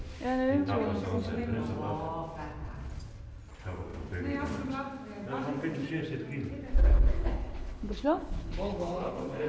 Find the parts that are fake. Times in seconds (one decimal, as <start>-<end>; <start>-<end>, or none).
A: 6.9-9.5